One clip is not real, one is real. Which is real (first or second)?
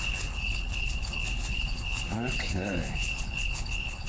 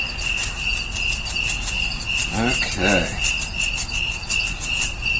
second